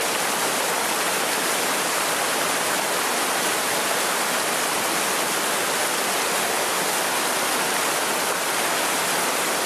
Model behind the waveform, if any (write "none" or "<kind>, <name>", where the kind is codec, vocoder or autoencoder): none